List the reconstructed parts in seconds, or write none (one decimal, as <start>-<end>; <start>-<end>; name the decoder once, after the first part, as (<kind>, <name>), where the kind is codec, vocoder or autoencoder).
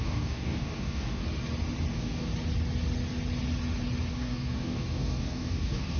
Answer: 0.0-1.2 (codec, DAC); 1.9-2.3; 4.1-6.0